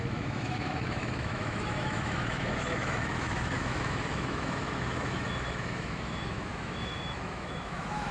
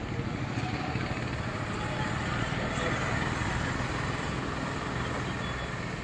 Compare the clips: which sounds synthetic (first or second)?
first